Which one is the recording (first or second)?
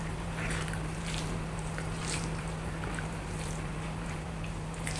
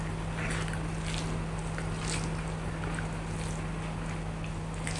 second